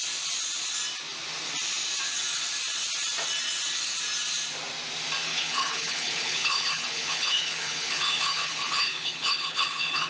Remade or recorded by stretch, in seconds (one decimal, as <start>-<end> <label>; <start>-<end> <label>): 0.0-5.3 recorded; 5.3-10.1 remade